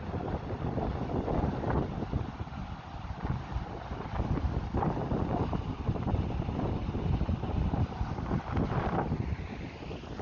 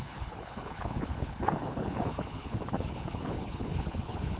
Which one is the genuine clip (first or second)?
first